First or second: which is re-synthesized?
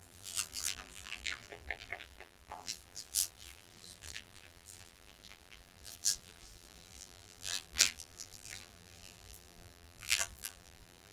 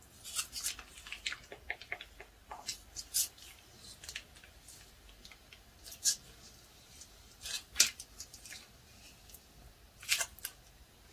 first